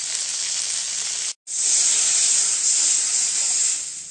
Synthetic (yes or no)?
no